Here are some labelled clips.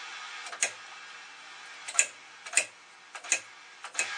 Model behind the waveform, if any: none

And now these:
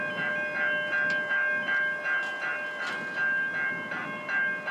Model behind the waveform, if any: none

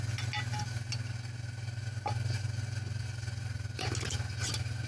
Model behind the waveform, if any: none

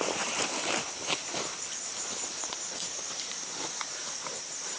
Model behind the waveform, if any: vocoder, BigVGAN v2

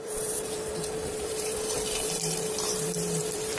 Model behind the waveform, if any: vocoder, BigVGAN v2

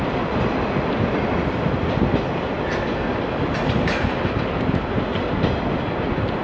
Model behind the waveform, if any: none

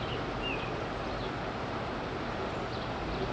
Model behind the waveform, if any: none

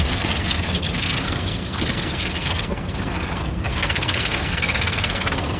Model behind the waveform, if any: codec, SNAC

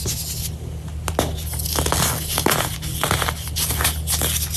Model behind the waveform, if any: none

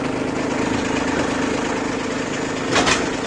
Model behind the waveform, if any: none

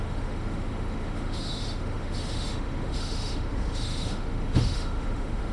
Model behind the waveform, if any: autoencoder, DAC-VAE